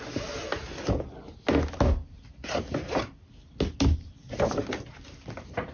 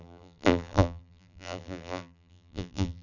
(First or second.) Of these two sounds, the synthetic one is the second